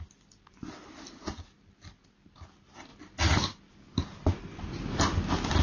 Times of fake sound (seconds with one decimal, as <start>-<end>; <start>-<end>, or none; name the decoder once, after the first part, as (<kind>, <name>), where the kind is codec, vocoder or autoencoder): none